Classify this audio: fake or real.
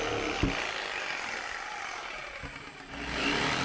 real